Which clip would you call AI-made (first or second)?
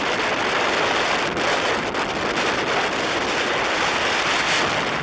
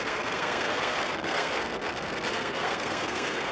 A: second